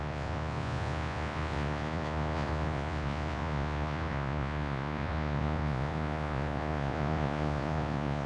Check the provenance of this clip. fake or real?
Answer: fake